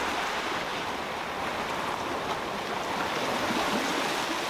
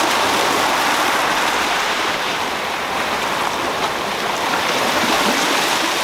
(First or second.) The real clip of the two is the first